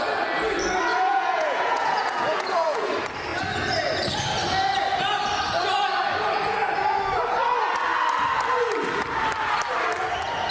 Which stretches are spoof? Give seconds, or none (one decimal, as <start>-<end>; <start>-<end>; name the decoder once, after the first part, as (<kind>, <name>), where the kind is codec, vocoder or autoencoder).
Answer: 0.9-2.9 (vocoder, Vocos)